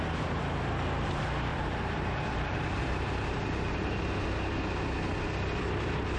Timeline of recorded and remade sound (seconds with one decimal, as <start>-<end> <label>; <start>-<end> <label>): 0.0-1.5 recorded; 1.5-3.7 remade; 3.7-6.2 recorded